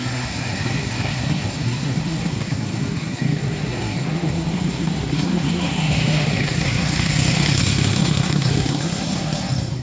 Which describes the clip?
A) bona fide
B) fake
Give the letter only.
B